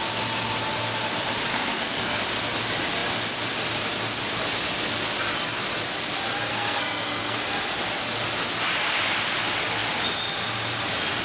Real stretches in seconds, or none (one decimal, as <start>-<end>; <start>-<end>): 0.0-1.5; 2.2-6.5; 7.4-11.2